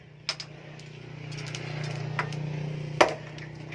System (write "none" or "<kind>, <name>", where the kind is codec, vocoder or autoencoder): none